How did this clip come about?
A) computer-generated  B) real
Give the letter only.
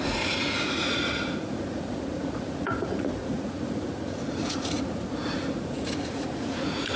A